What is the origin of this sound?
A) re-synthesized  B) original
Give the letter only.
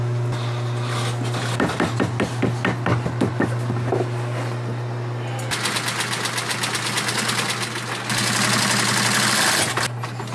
B